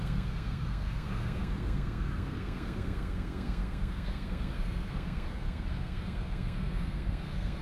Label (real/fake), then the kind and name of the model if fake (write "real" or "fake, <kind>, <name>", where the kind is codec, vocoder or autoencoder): fake, codec, SNAC